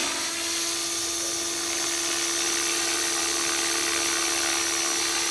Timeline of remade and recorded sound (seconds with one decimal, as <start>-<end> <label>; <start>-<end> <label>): 0.0-5.3 recorded